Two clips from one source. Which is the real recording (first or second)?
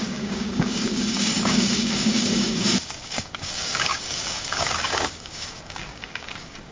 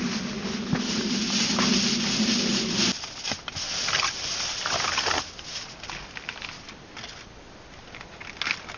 second